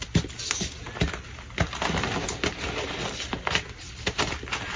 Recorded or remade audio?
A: recorded